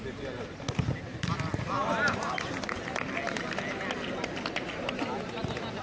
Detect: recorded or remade recorded